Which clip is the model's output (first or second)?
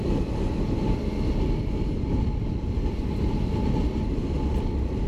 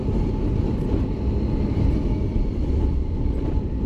second